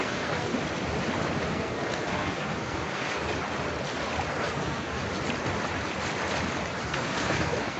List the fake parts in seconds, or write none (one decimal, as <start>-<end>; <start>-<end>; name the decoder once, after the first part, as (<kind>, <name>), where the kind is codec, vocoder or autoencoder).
0.0-0.5 (codec, SNAC); 1.5-3.3; 4.3-5.0; 6.8-7.8